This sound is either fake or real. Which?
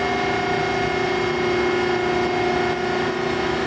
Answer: real